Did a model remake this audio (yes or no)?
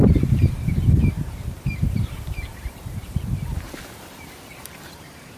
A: yes